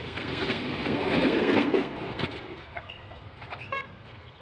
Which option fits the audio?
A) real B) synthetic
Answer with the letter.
B